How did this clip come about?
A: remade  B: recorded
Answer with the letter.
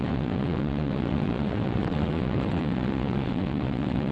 A